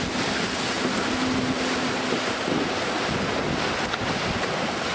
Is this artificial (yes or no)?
no